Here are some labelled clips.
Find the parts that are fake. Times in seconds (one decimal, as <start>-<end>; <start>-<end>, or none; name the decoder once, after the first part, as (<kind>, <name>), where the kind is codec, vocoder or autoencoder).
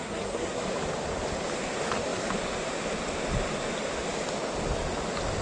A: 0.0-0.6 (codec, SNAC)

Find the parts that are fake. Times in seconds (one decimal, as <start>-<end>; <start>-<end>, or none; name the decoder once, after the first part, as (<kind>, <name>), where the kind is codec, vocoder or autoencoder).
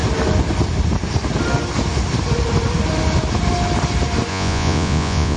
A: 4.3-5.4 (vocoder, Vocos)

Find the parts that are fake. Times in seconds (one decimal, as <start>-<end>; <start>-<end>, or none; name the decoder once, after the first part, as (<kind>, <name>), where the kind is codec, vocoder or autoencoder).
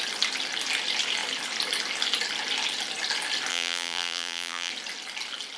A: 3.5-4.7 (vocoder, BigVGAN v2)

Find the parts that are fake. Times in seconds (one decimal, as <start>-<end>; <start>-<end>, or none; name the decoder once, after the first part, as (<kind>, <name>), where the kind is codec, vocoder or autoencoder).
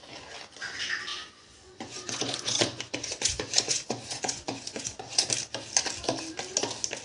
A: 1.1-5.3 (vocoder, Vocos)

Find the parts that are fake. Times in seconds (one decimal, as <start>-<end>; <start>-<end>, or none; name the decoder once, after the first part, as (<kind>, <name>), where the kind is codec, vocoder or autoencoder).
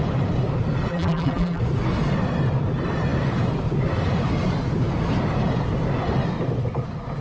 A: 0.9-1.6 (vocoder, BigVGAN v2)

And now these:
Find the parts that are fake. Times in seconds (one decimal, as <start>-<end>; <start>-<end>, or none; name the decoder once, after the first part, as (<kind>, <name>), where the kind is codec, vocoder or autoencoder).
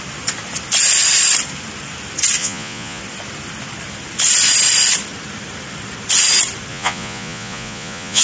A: 2.4-3.0 (vocoder, Vocos); 6.7-8.2